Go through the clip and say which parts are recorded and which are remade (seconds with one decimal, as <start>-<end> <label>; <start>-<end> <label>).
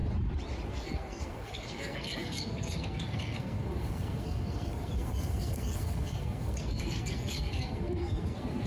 0.0-0.7 recorded; 0.7-8.7 remade